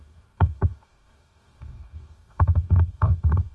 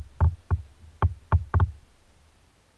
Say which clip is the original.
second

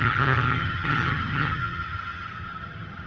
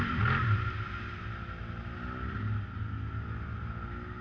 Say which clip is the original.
second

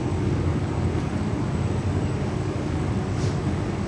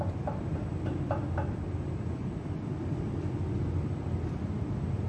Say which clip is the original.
second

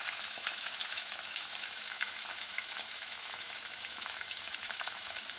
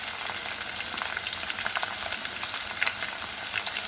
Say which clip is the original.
second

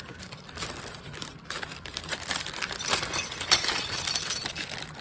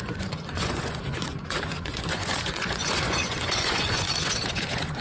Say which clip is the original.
first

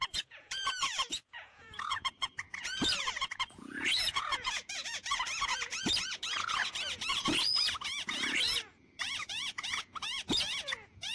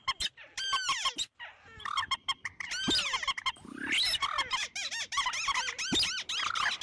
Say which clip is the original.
second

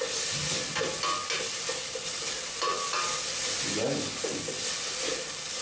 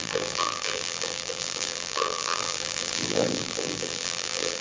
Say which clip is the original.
first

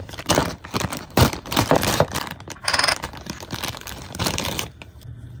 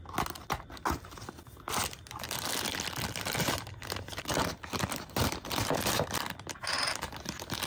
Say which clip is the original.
second